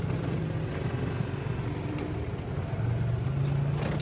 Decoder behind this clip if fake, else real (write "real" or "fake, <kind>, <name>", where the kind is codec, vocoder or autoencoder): real